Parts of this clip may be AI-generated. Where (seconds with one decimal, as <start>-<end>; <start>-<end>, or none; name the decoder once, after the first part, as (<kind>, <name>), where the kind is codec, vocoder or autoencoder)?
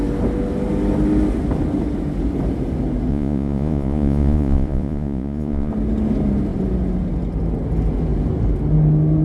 3.1-5.7 (vocoder, Vocos)